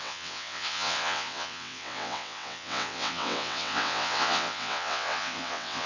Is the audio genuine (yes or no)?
no